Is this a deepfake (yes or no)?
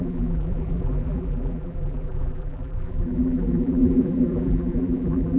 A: yes